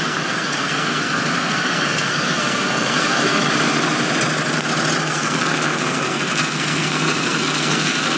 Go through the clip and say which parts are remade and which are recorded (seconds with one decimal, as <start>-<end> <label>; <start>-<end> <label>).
0.0-3.5 remade; 3.5-5.0 recorded; 5.0-8.2 remade